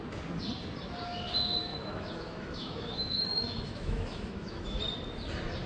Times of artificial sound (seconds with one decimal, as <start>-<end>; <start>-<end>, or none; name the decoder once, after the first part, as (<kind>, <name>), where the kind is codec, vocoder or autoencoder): 1.7-4.8 (autoencoder, DAC-VAE)